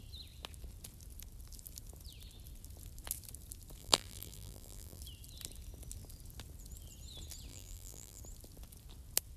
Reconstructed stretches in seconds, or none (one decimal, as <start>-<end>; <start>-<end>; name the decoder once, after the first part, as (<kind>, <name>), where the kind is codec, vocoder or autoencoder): 3.8-5.0 (vocoder, BigVGAN v2); 7.5-8.2